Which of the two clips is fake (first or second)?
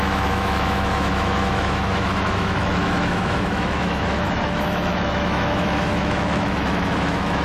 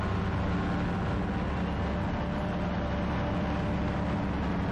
first